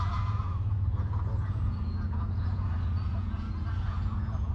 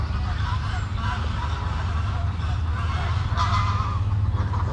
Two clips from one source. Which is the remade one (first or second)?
first